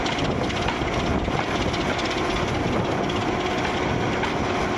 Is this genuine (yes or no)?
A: yes